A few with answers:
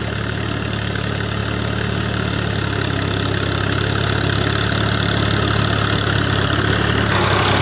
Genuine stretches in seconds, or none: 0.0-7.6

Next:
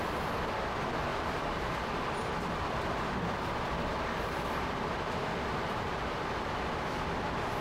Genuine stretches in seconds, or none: 0.0-1.1; 1.7-3.9; 6.3-7.6

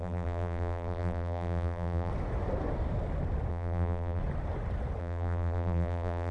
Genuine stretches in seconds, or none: 2.1-3.5; 4.2-5.0

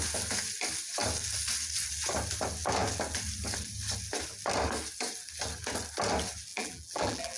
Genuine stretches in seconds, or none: 0.0-6.5